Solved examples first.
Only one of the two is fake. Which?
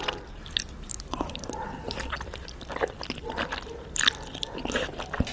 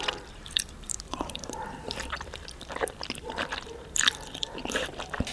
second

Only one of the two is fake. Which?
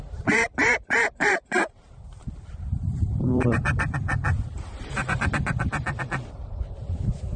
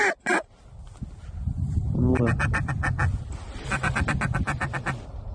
first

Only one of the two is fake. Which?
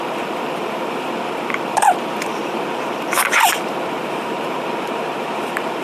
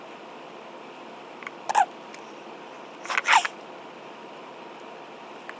first